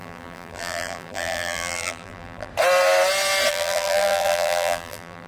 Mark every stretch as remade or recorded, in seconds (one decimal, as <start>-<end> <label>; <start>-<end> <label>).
0.0-2.5 remade; 2.5-3.5 recorded; 3.5-5.3 remade